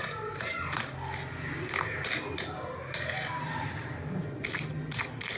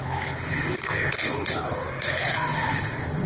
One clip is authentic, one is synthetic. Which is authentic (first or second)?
first